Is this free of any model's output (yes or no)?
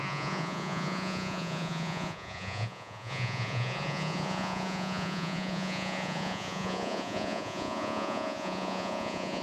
no